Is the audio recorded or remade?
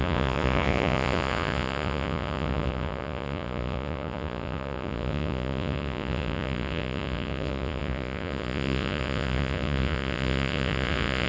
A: remade